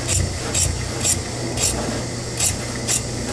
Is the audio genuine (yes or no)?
yes